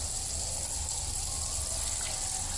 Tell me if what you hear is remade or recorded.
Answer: recorded